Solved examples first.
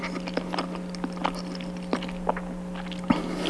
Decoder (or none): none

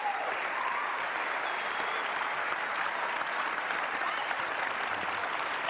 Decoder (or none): none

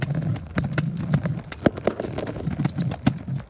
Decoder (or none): none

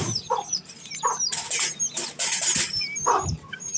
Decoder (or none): none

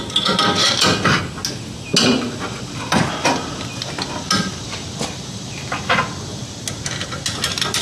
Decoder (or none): none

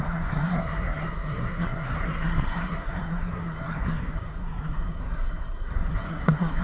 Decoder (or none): codec, SNAC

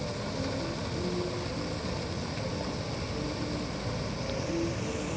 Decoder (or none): none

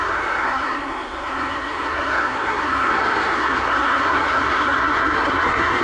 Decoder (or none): codec, SNAC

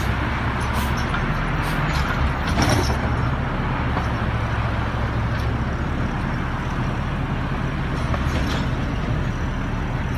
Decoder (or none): none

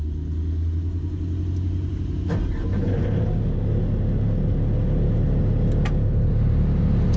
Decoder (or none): none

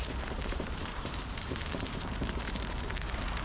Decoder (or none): vocoder, BigVGAN v2